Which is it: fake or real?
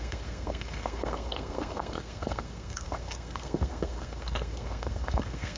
fake